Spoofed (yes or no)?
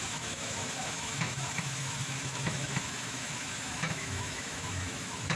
yes